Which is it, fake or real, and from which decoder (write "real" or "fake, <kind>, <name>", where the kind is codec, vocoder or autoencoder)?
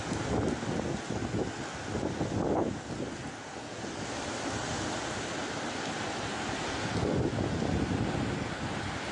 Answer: real